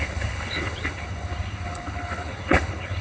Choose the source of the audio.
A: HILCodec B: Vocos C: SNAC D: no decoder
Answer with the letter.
A